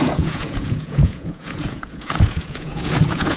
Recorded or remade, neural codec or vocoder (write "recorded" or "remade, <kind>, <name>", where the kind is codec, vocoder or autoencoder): remade, vocoder, Vocos